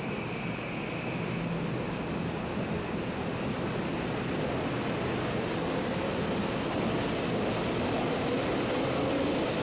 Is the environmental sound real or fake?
real